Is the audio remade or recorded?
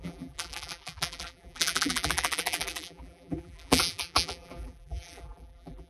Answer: remade